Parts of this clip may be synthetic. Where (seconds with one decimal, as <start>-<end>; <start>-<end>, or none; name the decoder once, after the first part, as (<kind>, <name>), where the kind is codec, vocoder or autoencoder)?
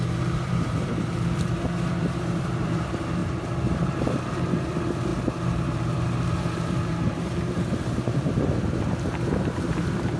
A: 0.0-10.2 (vocoder, BigVGAN v2)